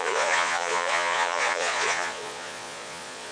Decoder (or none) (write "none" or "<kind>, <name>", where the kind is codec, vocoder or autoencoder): vocoder, Vocos